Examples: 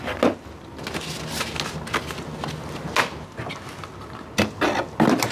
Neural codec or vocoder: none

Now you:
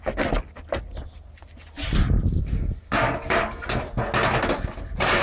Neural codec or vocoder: none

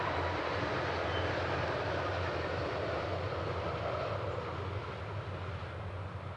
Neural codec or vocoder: none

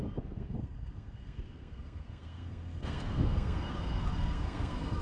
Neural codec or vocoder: codec, SNAC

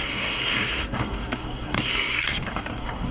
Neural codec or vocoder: codec, SNAC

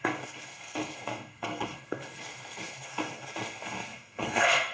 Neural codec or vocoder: codec, SNAC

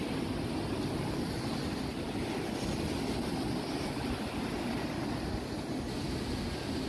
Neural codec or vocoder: none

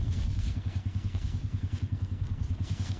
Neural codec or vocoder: codec, SNAC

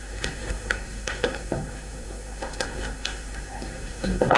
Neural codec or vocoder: codec, SNAC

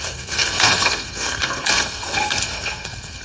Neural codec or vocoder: codec, SNAC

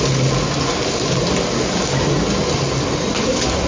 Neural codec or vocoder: none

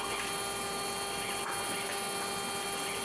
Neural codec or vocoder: none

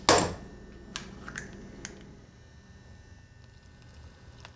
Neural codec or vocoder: none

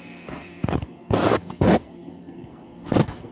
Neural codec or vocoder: codec, SNAC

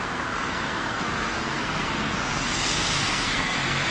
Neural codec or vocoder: codec, SNAC